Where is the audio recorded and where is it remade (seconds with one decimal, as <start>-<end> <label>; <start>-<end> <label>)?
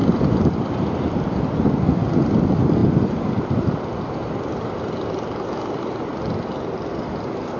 0.0-2.0 remade; 2.0-2.8 recorded; 2.8-4.8 remade; 4.8-7.6 recorded